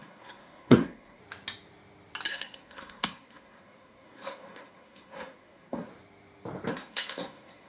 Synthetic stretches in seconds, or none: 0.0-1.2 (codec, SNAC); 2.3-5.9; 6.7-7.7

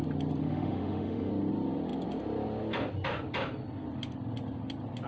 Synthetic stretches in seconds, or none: 0.4-1.3 (autoencoder, DAC-VAE)

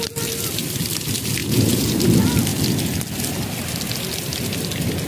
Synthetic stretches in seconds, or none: 1.4-1.9 (vocoder, Vocos)

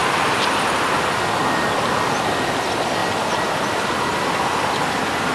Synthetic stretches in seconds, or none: none

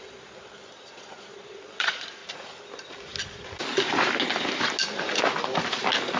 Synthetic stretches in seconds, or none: 0.0-2.2 (vocoder, Vocos)

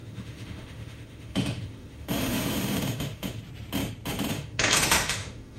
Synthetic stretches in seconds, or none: 0.0-3.4 (autoencoder, DAC-VAE); 4.3-5.6

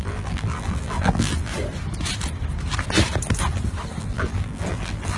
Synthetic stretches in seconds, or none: 0.0-1.5 (vocoder, BigVGAN v2); 4.0-5.2